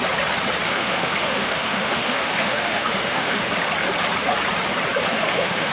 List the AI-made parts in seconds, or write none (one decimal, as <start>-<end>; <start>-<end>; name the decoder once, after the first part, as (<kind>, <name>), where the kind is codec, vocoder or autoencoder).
0.7-3.5 (autoencoder, DAC-VAE); 5.1-5.7